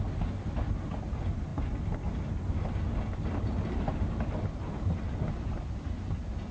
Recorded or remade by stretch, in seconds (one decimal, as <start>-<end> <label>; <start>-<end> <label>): 0.0-6.5 recorded